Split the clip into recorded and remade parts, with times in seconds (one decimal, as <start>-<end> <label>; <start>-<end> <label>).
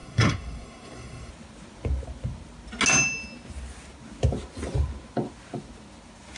0.0-1.3 remade; 1.3-6.4 recorded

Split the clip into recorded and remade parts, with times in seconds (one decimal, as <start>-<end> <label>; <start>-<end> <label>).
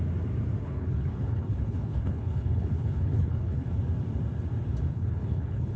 0.0-0.6 recorded; 0.6-3.7 remade; 3.7-4.9 recorded; 4.9-5.8 remade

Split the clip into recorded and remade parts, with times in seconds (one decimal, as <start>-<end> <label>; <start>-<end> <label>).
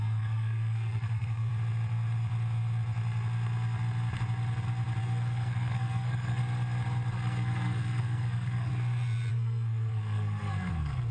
0.0-1.5 remade; 1.5-5.0 recorded; 5.0-6.4 remade; 6.4-7.1 recorded; 7.1-8.7 remade; 8.7-9.3 recorded; 9.3-11.1 remade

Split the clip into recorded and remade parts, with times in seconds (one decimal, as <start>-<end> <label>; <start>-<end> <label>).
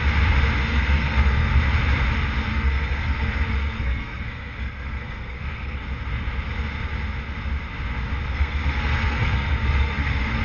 0.0-0.7 recorded; 0.7-1.5 remade; 1.5-2.5 recorded; 2.5-5.8 remade; 5.8-8.3 recorded; 8.3-10.4 remade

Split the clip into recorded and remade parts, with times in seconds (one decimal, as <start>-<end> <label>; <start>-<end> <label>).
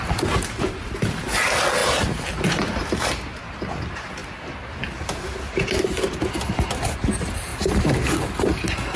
0.0-1.8 recorded; 1.8-2.6 remade; 2.6-4.2 recorded; 4.2-4.8 remade; 4.8-9.0 recorded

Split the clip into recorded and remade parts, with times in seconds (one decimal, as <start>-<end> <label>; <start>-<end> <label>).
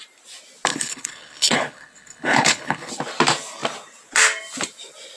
0.0-0.7 recorded; 0.7-2.9 remade; 2.9-5.2 recorded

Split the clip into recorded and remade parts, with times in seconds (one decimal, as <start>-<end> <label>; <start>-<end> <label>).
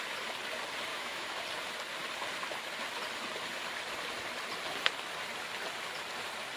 0.0-0.9 recorded; 0.9-1.4 remade; 1.4-6.6 recorded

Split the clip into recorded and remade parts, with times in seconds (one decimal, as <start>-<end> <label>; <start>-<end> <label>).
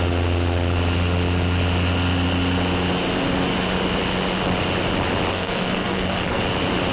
0.0-5.3 recorded; 5.3-6.4 remade; 6.4-6.9 recorded